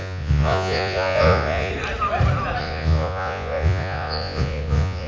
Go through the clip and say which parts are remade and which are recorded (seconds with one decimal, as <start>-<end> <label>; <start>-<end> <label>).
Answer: 0.0-1.7 remade; 1.7-2.6 recorded; 2.6-5.1 remade